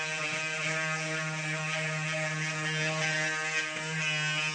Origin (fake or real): real